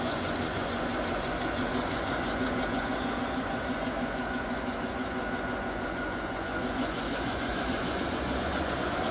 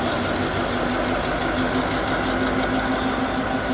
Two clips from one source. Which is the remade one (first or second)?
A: first